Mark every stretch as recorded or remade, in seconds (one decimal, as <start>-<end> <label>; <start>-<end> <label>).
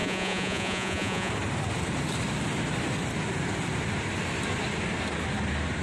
0.0-1.3 remade; 1.3-5.8 recorded